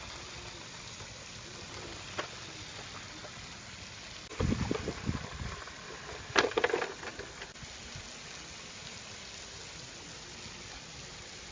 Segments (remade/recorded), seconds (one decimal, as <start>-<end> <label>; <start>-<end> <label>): 0.0-11.5 recorded